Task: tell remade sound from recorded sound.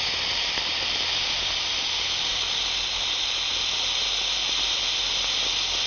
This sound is recorded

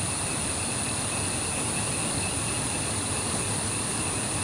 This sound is recorded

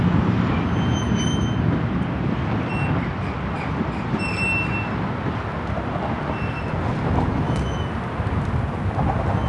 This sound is recorded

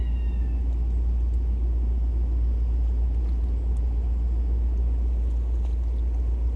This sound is recorded